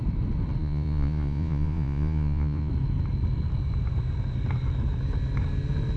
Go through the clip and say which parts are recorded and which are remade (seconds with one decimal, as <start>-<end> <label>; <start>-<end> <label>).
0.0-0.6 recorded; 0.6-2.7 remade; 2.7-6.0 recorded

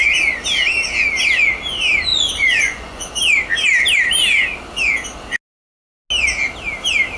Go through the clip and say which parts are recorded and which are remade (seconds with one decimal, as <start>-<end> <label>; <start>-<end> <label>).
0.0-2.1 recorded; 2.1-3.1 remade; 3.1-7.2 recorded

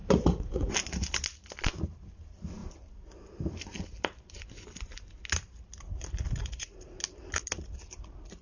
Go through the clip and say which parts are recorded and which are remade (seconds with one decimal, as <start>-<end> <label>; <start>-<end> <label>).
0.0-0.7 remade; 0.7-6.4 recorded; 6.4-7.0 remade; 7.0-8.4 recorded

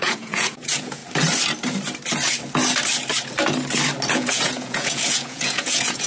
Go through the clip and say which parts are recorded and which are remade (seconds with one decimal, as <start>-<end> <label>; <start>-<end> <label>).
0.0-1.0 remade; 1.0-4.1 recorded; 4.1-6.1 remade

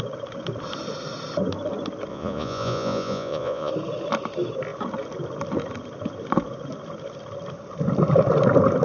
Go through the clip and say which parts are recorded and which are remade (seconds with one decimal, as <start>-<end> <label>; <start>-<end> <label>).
0.0-2.1 recorded; 2.1-3.7 remade; 3.7-8.8 recorded